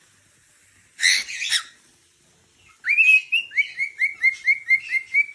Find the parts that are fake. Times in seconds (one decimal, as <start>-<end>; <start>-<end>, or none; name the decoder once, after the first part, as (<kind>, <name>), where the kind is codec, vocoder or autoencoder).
none

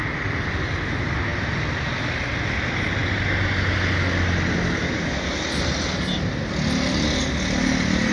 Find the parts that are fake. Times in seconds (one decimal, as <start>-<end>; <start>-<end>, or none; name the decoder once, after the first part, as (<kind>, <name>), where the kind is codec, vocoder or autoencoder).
none

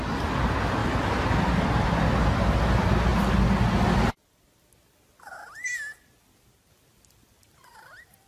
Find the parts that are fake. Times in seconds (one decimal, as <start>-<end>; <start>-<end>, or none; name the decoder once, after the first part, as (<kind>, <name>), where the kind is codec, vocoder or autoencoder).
0.8-2.0 (vocoder, BigVGAN v2)

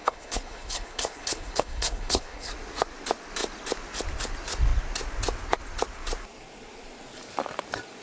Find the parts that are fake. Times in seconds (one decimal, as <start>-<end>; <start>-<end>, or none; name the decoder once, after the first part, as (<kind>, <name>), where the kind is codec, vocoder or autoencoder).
0.0-2.5 (codec, HILCodec)

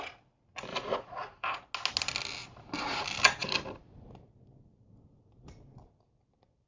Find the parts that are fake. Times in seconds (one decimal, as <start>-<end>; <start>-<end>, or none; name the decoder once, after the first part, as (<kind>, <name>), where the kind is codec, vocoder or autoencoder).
0.7-1.7 (vocoder, Vocos)

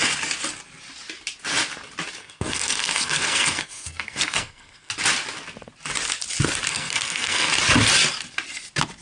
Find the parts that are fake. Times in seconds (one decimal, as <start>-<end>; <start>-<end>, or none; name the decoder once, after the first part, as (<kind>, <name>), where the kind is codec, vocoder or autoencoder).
2.2-4.9 (codec, SNAC); 6.7-7.5

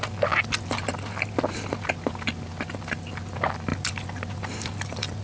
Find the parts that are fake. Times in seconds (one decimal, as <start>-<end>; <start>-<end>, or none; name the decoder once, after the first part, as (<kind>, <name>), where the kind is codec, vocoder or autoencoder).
none